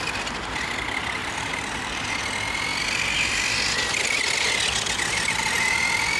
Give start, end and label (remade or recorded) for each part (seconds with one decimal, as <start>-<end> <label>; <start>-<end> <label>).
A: 0.0-1.2 recorded; 1.2-2.2 remade; 2.2-6.2 recorded